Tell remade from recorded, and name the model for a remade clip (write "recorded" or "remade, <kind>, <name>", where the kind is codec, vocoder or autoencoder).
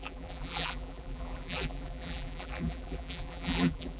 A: remade, vocoder, BigVGAN v2